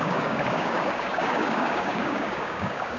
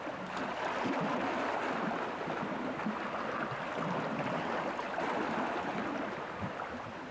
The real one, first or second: second